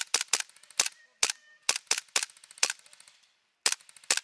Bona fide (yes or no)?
yes